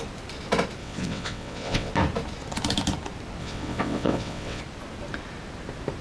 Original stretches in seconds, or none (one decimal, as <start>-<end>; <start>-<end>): 0.0-0.8; 1.9-3.4; 4.6-6.0